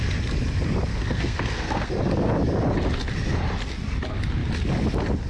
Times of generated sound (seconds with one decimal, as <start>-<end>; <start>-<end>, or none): 0.9-1.9